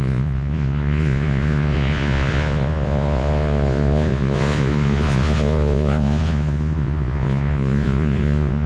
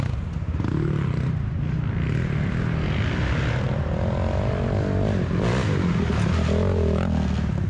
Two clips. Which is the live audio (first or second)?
second